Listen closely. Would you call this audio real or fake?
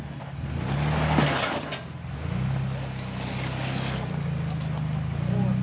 real